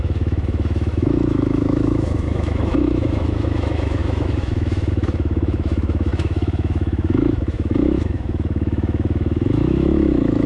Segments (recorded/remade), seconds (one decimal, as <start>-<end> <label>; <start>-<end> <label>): 0.0-10.5 remade